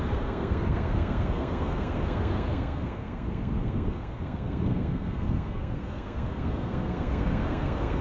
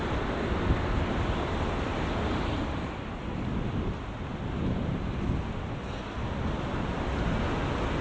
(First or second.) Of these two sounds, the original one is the second